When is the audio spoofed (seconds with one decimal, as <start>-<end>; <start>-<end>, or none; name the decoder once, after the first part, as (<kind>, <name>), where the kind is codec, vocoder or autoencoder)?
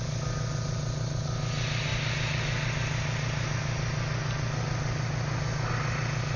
none